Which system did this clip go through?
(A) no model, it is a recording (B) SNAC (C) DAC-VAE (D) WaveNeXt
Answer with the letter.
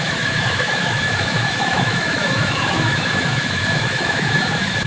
C